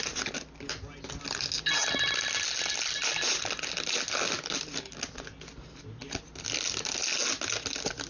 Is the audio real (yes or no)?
yes